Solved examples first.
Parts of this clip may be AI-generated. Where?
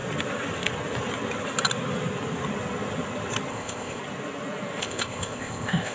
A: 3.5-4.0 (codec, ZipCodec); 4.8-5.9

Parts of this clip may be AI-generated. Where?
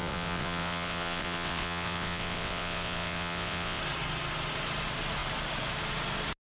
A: 0.0-3.8 (vocoder, WaveNeXt)